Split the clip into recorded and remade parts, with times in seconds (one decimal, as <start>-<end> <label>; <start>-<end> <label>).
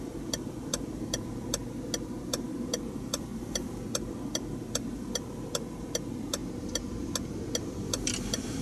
0.0-1.6 remade; 1.6-2.2 recorded; 2.2-6.4 remade; 6.4-7.6 recorded; 7.6-8.6 remade